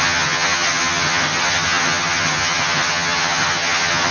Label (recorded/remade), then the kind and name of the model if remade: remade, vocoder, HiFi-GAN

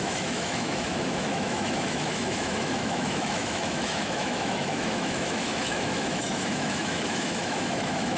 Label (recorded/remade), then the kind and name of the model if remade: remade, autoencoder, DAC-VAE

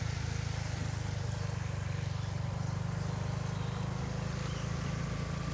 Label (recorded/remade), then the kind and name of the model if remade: recorded